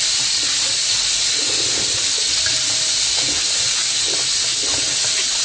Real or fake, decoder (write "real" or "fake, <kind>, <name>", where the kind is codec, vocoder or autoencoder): real